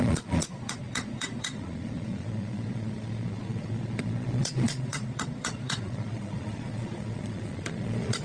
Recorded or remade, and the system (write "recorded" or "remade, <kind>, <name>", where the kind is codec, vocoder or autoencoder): remade, vocoder, Vocos